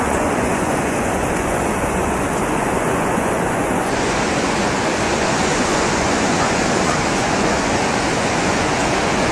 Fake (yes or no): yes